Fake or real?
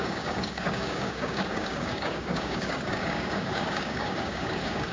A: fake